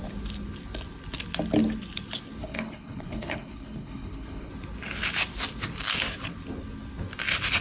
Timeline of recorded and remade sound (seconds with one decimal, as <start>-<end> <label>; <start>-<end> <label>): 0.0-2.4 recorded; 2.4-4.5 remade; 4.5-7.6 recorded